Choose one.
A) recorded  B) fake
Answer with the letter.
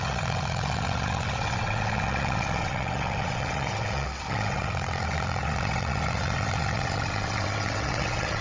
B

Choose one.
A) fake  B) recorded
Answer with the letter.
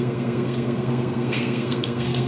A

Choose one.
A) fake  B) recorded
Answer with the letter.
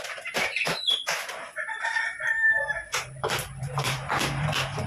A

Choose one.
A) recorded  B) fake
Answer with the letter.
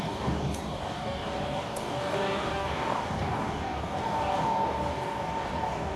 B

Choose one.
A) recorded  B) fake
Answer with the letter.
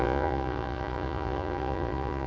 B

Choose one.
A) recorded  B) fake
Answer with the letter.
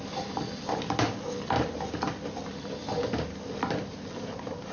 A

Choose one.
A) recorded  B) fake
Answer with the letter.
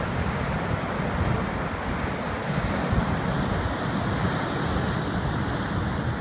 A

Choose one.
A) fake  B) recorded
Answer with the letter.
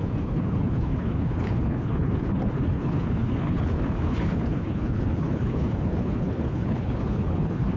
A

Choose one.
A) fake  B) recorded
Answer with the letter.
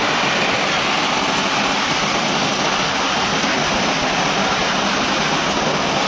B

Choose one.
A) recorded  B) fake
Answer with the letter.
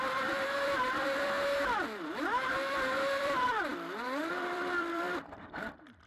B